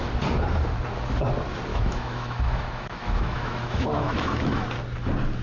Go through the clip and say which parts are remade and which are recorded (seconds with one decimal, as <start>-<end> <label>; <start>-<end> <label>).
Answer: 0.0-1.7 recorded; 1.7-4.6 remade; 4.6-5.4 recorded